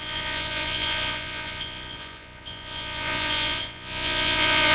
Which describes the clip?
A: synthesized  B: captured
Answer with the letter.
A